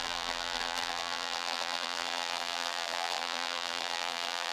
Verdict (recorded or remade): remade